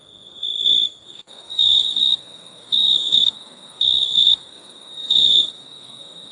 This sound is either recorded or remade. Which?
remade